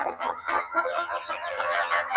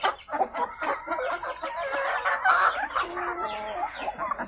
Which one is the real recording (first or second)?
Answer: second